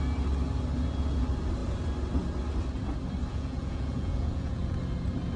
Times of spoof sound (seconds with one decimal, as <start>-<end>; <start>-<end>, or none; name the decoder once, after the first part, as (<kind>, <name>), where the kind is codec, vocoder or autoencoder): 3.3-4.8 (vocoder, Vocos)

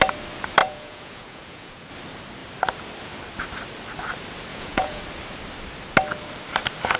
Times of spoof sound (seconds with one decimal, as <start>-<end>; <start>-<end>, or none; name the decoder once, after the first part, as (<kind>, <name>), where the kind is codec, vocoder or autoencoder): 0.6-1.9 (vocoder, Vocos); 4.5-5.0